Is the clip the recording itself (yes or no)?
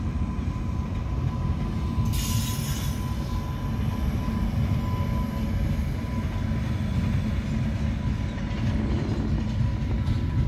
yes